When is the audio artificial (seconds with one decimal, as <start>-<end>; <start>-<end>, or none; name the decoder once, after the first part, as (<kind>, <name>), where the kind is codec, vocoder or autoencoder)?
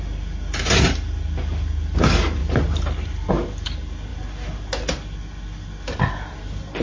none